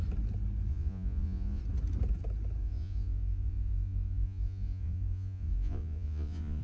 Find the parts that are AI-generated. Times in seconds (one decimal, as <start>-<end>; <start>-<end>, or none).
0.7-1.6; 2.6-6.6